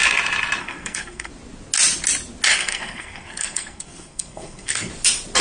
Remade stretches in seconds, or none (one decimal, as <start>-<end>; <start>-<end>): 0.6-1.3; 2.5-4.9